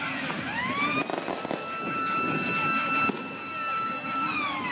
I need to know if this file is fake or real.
real